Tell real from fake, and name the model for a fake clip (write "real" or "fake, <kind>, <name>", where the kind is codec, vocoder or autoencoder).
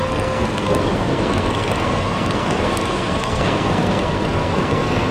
fake, codec, SNAC